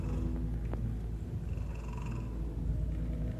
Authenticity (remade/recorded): recorded